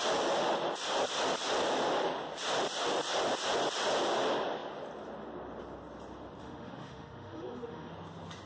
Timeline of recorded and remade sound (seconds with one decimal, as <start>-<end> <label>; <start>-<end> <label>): 0.0-6.4 recorded; 6.4-7.9 remade; 7.9-8.5 recorded